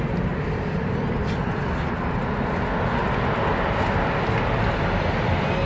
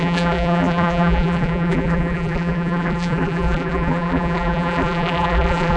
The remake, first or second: second